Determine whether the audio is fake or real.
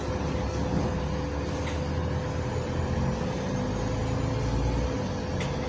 real